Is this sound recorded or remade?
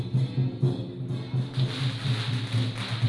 recorded